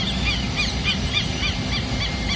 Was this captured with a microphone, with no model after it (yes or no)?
yes